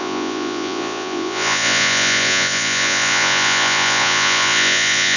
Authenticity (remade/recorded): remade